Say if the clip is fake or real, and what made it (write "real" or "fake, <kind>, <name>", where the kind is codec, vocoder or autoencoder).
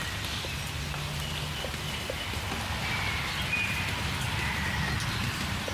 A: real